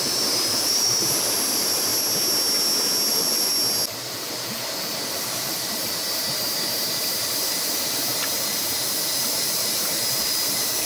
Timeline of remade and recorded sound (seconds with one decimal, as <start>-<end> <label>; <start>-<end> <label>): 0.0-1.9 remade; 1.9-3.1 recorded; 3.1-3.5 remade; 3.5-4.9 recorded; 4.9-10.9 remade